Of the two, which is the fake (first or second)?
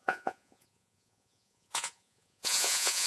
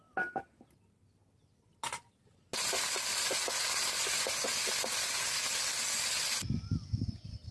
first